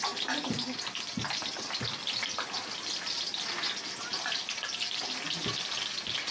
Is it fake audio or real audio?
real